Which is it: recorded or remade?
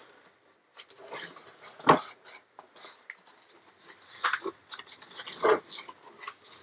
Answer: recorded